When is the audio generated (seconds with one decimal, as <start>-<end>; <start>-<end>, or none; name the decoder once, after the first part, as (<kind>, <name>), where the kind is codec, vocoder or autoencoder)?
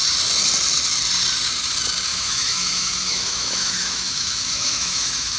2.1-5.4 (autoencoder, DAC-VAE)